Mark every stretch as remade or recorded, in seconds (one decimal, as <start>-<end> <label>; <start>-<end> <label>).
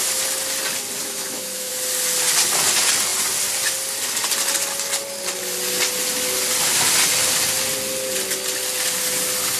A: 0.0-1.0 recorded; 1.0-1.7 remade; 1.7-9.6 recorded